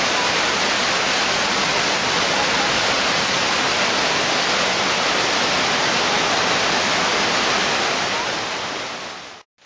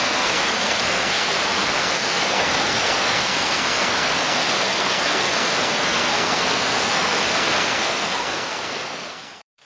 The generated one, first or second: second